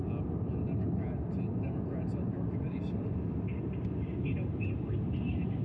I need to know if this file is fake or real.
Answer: real